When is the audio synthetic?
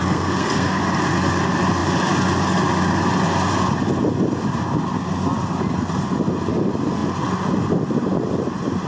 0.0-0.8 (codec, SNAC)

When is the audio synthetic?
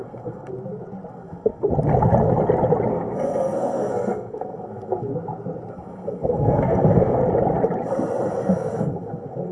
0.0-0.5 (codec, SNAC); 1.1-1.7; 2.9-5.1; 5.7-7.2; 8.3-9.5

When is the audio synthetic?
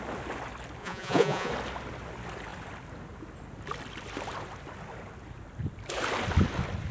0.8-1.5 (vocoder, Vocos)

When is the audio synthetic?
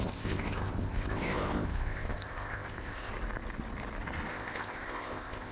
0.0-3.1 (codec, ZipCodec); 4.3-5.5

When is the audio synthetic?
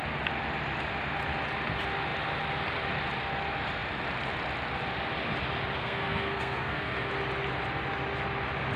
5.8-7.1 (codec, SNAC)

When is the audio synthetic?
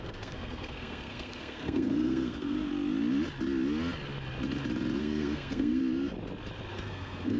0.0-2.7 (codec, SNAC); 5.0-5.8; 6.7-7.4